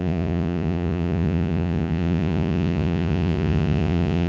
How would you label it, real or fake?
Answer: fake